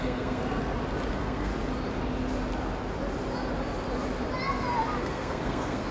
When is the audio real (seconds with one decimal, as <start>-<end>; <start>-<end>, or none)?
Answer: 0.4-1.1; 1.5-5.0